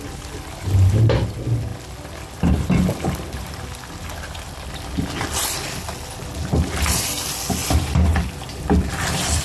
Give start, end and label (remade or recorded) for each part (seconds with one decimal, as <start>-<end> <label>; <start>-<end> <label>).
0.0-9.4 recorded